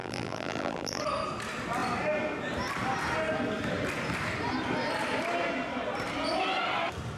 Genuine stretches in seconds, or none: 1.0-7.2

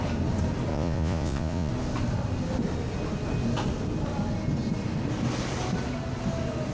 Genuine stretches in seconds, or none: 0.0-0.7; 1.7-6.7

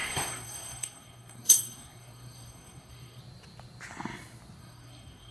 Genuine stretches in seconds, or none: 3.2-4.6

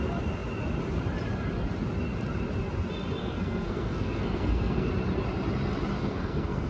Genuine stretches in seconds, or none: 0.0-3.2; 4.9-6.0

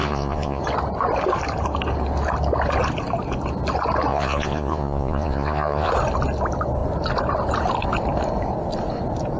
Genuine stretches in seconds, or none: 0.6-4.1; 5.9-9.4